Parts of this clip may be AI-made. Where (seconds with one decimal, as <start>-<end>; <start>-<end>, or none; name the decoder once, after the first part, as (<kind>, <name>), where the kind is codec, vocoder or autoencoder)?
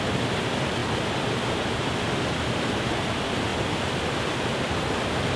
none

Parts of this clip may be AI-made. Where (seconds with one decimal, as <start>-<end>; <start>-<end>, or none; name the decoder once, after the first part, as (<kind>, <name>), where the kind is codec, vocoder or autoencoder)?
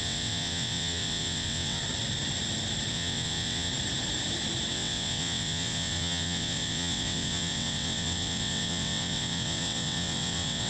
0.0-1.8 (vocoder, WaveNeXt); 2.9-3.7; 4.7-10.7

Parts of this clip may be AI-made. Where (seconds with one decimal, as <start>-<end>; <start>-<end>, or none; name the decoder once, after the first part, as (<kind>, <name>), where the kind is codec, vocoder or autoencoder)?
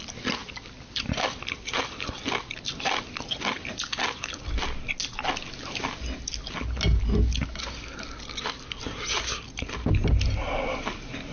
none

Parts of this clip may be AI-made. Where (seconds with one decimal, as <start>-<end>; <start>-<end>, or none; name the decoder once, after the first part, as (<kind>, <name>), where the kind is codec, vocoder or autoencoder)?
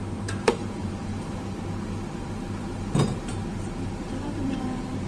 0.0-1.1 (vocoder, BigVGAN v2); 4.2-5.1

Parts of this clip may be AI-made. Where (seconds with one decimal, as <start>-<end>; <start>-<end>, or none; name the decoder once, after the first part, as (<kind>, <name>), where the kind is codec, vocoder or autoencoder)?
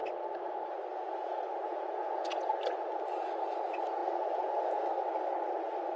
0.9-2.5 (vocoder, Vocos); 4.0-4.8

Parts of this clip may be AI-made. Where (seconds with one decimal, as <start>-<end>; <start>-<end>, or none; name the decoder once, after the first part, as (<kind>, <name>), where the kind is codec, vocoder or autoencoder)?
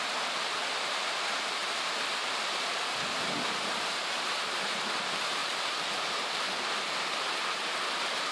1.6-4.3 (vocoder, BigVGAN v2); 5.4-7.3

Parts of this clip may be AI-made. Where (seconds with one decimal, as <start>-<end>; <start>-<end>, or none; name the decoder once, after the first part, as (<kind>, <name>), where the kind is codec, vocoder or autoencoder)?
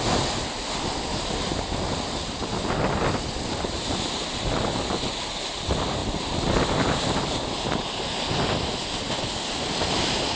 none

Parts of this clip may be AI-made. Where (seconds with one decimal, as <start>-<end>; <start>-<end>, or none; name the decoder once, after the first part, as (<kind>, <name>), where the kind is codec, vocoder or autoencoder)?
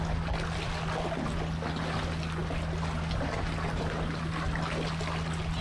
none